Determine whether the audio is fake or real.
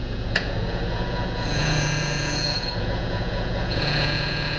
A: fake